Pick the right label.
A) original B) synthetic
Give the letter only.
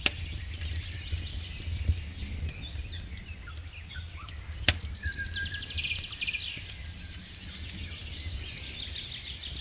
A